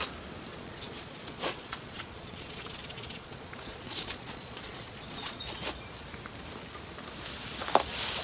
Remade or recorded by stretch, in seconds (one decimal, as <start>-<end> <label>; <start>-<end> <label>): 0.0-0.5 recorded; 0.5-5.4 remade; 5.4-8.2 recorded